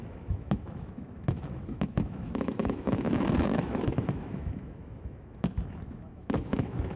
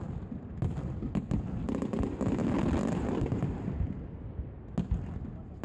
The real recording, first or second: second